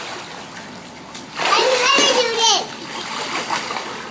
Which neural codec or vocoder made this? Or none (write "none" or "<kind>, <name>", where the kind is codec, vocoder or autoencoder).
none